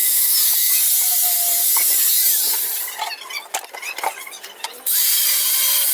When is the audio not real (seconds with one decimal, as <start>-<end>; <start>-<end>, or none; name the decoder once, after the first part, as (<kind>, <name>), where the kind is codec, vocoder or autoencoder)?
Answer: 0.0-0.7 (autoencoder, DAC-VAE)